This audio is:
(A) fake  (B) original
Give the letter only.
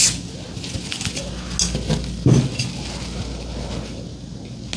B